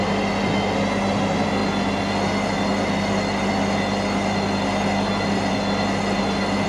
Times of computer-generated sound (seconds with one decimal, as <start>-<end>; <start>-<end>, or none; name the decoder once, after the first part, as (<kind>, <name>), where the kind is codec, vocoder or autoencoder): none